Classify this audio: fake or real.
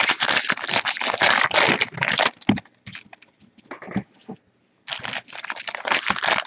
real